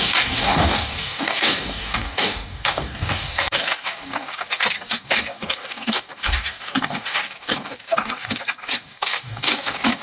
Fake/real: fake